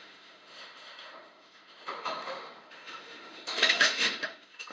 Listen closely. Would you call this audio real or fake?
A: fake